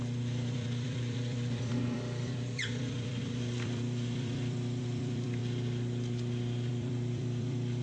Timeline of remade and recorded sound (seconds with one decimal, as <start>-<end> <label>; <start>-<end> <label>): 0.0-5.4 remade; 5.4-6.7 recorded; 6.7-7.8 remade